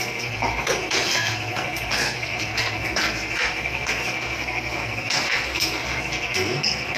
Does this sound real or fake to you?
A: fake